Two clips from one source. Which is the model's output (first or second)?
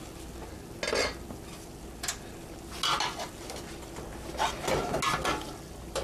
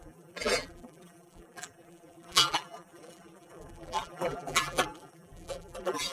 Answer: second